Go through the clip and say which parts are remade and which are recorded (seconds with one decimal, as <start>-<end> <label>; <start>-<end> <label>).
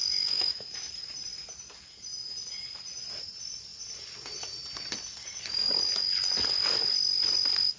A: 0.0-0.9 remade; 0.9-7.8 recorded